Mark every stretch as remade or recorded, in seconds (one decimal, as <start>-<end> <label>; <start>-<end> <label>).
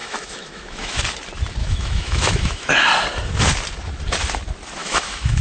0.0-1.0 remade; 1.0-1.6 recorded; 1.6-2.7 remade; 2.7-4.8 recorded; 4.8-5.4 remade